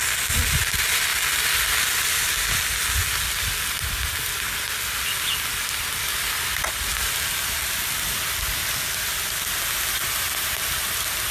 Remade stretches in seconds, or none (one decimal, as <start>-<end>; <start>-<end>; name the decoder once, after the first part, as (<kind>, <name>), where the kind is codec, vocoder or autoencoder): 8.6-9.2 (vocoder, BigVGAN v2)